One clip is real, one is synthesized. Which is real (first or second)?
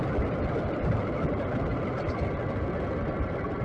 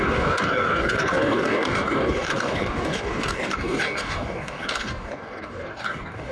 first